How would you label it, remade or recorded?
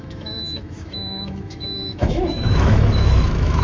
remade